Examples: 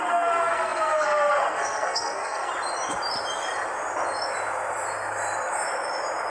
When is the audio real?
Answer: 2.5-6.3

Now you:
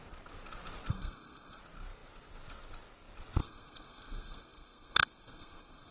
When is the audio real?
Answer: 0.0-0.9; 1.6-3.4

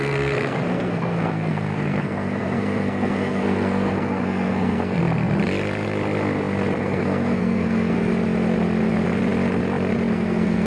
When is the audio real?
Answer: 5.0-6.8; 8.1-10.1

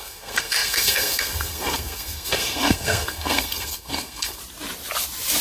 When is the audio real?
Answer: 4.4-5.4

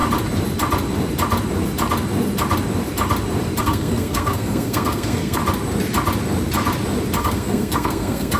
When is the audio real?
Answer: 0.0-3.6; 5.4-7.2

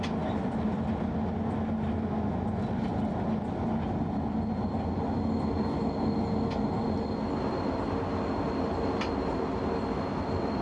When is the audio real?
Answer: 0.0-10.6

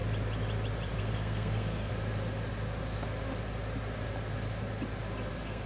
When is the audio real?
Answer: 0.0-1.0; 1.9-5.3

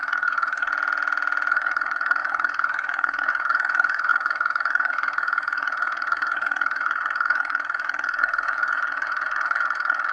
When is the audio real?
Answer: 0.7-1.5